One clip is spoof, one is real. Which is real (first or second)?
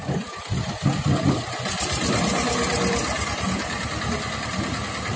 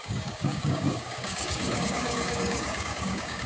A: first